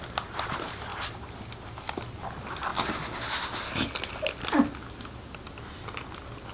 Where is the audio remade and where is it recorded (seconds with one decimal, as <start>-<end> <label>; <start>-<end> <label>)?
0.0-6.5 recorded

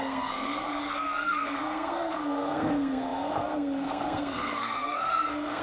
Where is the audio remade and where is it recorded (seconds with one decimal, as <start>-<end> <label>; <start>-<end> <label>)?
0.0-5.6 remade

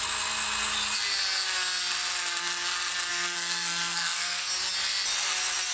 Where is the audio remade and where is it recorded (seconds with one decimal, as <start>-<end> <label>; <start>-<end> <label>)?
0.0-3.1 recorded; 3.1-4.5 remade; 4.5-5.7 recorded